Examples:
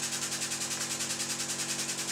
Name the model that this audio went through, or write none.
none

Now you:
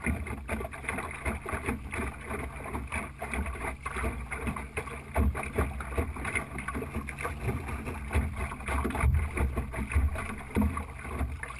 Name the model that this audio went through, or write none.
none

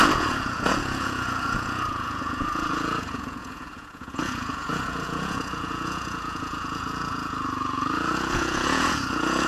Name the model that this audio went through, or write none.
vocoder, Vocos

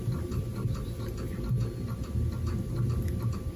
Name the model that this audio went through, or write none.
none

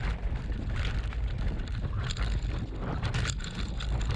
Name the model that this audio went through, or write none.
none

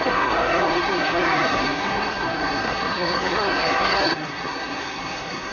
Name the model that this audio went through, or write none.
codec, SNAC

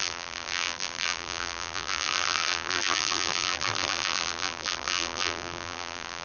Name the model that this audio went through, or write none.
vocoder, BigVGAN v2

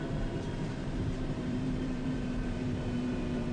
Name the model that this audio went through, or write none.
vocoder, BigVGAN v2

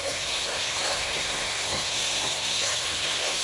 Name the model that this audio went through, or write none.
codec, SNAC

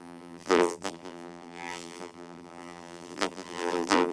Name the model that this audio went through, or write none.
vocoder, BigVGAN v2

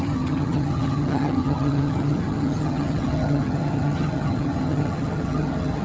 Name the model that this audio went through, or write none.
vocoder, HiFi-GAN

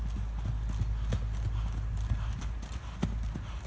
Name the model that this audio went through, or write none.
none